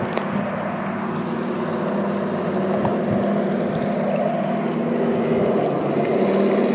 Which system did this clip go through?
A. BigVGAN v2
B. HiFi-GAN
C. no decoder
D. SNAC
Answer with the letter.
C